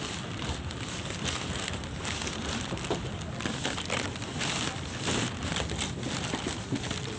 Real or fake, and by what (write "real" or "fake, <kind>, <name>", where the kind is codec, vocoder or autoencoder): real